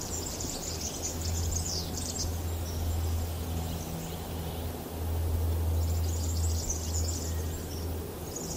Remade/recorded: recorded